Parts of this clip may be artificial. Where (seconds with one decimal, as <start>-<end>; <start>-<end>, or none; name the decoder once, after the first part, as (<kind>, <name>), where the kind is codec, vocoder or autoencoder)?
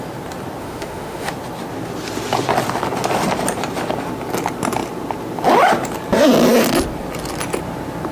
0.6-1.3 (autoencoder, DAC-VAE)